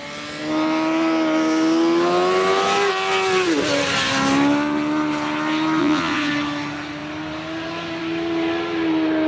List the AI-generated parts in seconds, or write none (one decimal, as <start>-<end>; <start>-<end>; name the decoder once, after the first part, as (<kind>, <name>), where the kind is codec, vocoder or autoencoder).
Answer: 5.8-6.3 (vocoder, Vocos)